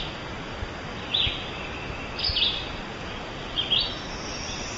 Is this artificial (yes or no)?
no